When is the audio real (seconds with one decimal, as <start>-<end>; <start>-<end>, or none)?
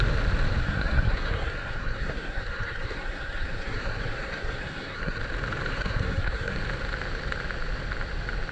0.0-0.6; 5.2-5.7; 6.6-8.5